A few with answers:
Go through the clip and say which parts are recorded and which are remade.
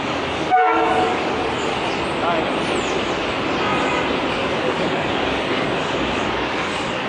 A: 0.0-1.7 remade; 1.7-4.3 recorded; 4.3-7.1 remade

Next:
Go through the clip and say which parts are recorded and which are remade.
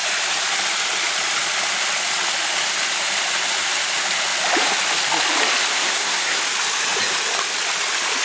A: 0.0-5.7 recorded; 5.7-6.4 remade; 6.4-8.2 recorded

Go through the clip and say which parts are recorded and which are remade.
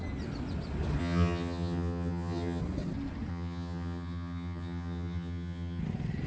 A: 0.0-1.0 recorded; 1.0-2.6 remade; 2.6-3.3 recorded; 3.3-5.8 remade; 5.8-6.3 recorded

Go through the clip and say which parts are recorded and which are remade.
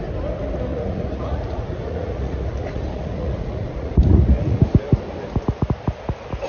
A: 0.0-0.7 recorded; 0.7-4.6 remade; 4.6-6.5 recorded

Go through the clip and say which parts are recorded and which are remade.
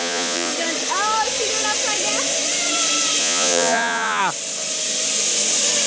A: 0.0-0.5 remade; 0.5-3.2 recorded; 3.2-4.2 remade; 4.2-5.9 recorded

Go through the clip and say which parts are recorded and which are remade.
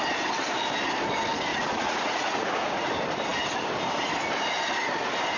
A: 0.0-1.5 recorded; 1.5-2.9 remade; 2.9-5.4 recorded